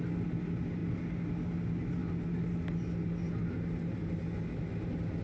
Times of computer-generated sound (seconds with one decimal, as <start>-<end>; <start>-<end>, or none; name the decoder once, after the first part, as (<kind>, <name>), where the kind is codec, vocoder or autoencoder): none